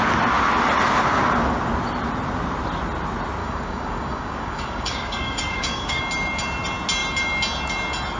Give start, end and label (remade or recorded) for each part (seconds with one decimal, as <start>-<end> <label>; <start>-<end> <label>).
0.0-3.4 recorded; 3.4-6.0 remade; 6.0-8.2 recorded